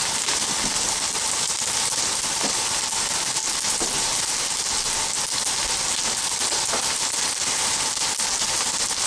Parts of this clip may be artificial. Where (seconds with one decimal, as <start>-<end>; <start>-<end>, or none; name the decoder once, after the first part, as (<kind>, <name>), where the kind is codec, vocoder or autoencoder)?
none